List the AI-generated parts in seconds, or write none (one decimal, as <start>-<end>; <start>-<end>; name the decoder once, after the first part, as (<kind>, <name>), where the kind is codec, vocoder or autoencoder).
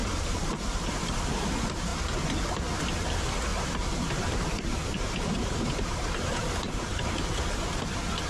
0.0-0.8 (vocoder, BigVGAN v2); 3.5-7.1